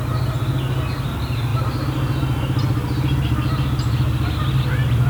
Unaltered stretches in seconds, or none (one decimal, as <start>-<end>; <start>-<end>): 0.0-5.1